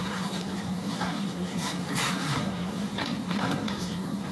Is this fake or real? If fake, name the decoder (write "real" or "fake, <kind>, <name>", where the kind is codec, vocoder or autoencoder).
fake, codec, SNAC